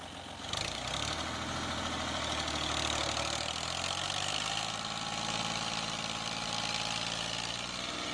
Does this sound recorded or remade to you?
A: recorded